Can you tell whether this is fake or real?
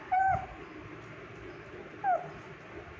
real